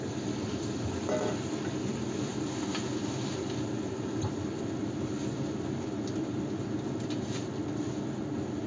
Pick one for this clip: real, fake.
real